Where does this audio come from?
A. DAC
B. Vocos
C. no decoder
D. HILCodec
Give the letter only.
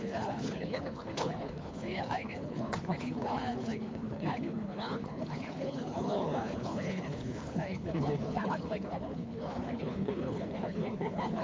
D